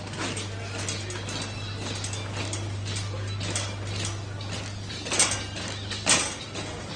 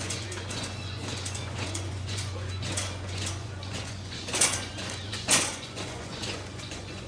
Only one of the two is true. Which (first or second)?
first